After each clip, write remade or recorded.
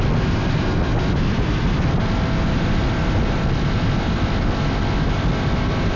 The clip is recorded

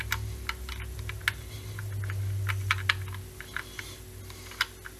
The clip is recorded